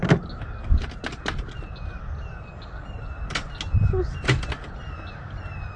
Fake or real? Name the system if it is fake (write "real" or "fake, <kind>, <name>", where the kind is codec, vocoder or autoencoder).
real